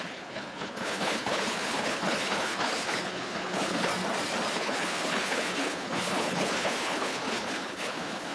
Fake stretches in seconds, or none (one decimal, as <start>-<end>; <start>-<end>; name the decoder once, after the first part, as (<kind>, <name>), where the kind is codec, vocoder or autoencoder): 0.0-3.9 (codec, HILCodec); 4.5-8.3